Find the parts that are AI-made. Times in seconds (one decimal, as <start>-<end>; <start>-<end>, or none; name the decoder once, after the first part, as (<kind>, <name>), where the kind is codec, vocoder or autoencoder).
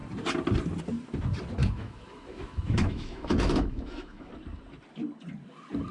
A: 1.6-4.3 (autoencoder, DAC-VAE)